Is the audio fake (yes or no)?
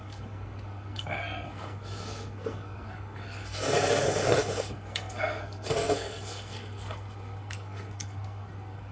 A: yes